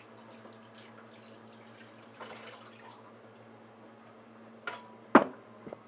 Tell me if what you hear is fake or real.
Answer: real